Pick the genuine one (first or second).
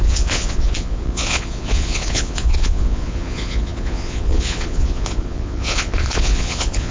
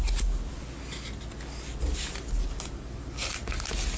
second